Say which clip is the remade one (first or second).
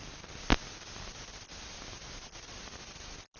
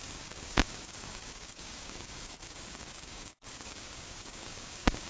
second